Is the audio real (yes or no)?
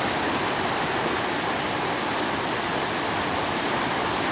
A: yes